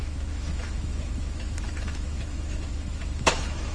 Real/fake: fake